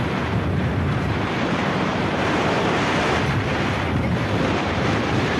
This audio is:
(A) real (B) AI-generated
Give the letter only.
B